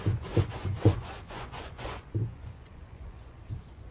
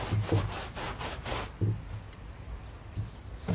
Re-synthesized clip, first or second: first